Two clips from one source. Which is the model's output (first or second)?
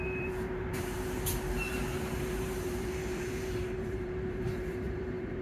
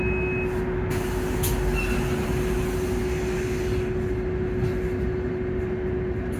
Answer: first